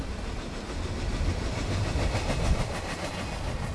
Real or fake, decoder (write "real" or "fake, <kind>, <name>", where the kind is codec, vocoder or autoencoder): real